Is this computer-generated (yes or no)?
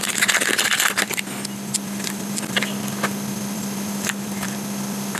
no